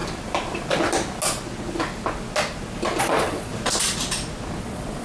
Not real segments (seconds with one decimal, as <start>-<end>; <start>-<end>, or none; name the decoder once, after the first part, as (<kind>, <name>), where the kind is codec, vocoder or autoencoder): 3.0-3.5 (vocoder, Vocos); 4.6-5.0